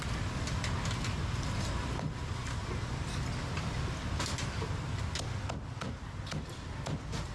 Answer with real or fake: real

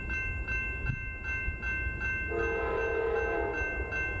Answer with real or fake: real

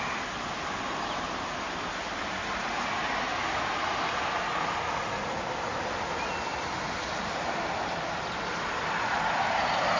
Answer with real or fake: real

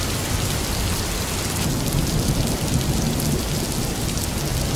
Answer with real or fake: real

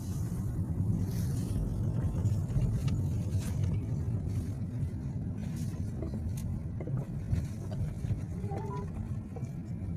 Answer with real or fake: real